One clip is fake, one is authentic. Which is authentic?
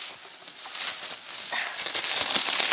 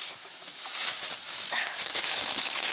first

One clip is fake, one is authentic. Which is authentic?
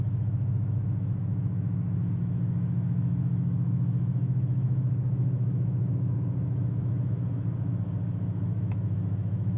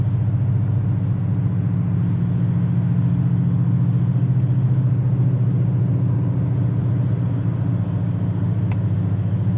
second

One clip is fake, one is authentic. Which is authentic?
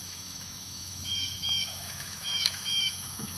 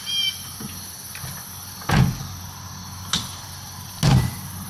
second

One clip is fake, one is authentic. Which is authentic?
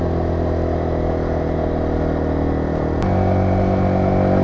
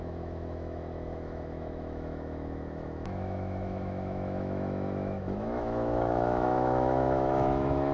first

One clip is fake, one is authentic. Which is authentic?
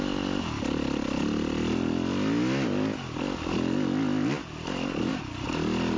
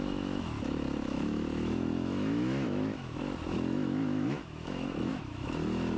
first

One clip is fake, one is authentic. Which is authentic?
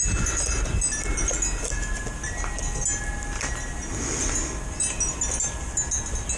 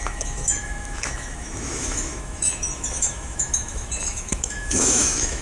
first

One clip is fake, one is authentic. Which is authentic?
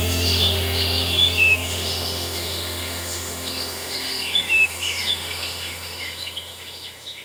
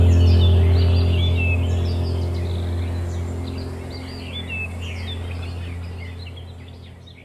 second